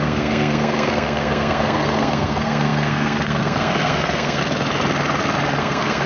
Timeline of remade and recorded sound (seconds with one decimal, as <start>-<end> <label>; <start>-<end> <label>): 0.0-4.4 remade; 4.4-5.6 recorded; 5.6-6.1 remade